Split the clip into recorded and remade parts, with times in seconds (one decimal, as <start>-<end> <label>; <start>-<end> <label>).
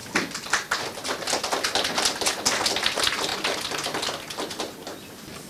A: 0.0-5.5 recorded